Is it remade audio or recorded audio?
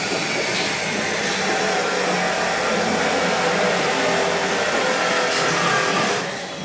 recorded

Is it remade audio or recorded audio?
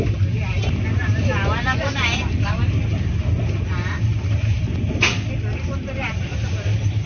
recorded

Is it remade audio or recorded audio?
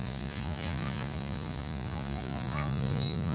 remade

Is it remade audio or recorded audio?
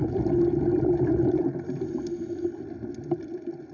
recorded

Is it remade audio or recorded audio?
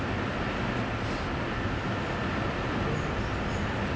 recorded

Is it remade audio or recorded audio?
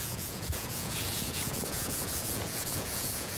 remade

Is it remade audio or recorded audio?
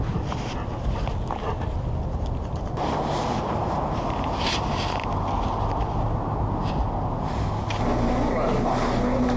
recorded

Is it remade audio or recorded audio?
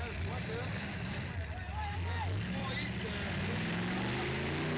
recorded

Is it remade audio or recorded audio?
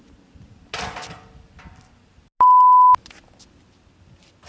recorded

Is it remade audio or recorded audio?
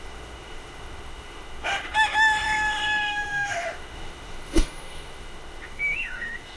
remade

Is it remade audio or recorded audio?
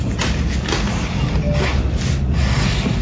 recorded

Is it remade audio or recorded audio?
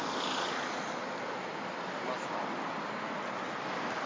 recorded